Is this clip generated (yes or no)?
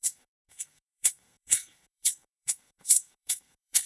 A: yes